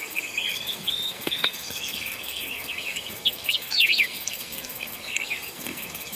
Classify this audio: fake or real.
fake